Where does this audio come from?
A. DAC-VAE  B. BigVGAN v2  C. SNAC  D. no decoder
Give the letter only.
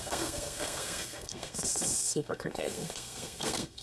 C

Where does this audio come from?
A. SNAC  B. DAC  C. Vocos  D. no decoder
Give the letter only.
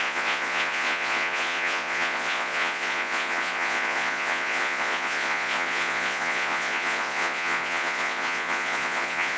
C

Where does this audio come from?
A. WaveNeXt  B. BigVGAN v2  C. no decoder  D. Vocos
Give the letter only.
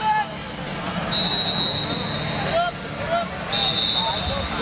C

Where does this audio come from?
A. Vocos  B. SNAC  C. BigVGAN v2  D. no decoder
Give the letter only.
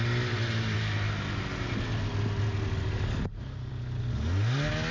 D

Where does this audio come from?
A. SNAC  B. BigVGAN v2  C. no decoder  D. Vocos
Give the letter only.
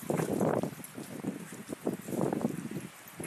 C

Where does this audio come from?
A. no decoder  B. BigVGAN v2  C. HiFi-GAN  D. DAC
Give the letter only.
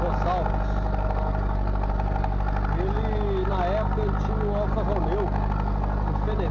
A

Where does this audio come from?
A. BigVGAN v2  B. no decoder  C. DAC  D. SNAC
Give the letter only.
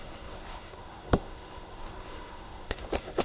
D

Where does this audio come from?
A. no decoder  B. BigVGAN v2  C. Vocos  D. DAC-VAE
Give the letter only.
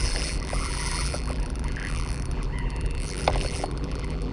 B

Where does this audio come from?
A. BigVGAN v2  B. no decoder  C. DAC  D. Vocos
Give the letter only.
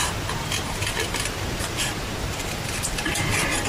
A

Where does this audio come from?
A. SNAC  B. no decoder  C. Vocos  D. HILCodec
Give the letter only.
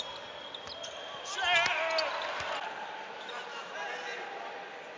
B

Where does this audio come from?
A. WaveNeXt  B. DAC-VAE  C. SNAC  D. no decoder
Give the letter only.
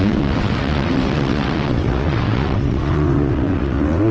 A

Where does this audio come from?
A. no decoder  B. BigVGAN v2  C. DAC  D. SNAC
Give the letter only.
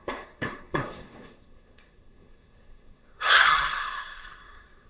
D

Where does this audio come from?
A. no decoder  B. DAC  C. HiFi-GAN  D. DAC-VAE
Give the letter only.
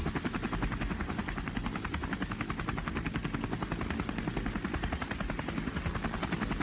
A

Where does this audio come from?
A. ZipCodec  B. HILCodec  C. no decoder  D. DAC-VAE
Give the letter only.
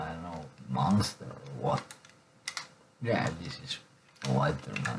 C